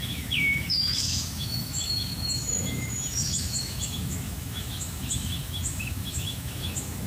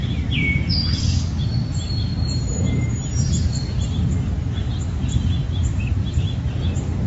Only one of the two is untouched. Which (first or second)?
second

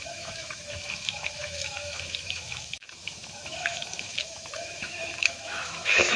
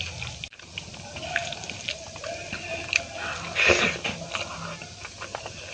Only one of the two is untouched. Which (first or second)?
second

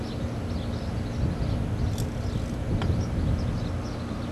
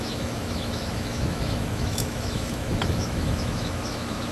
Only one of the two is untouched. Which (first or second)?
first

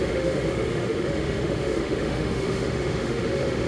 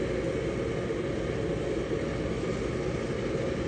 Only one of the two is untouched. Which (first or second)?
second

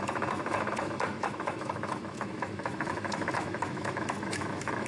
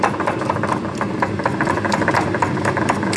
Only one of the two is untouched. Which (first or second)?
second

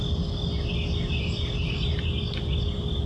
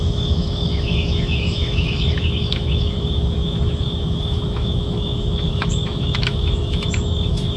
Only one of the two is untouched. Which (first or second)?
first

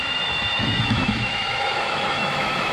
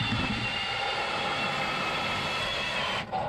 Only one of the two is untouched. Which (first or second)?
second